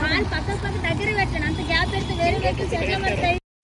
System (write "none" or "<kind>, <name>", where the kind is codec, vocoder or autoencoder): none